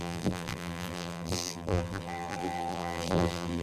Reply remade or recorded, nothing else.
remade